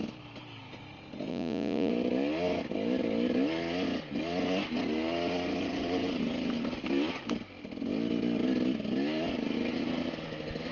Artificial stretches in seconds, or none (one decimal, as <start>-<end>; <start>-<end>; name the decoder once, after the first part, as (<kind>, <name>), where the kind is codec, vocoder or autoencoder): 1.3-1.9 (vocoder, Vocos)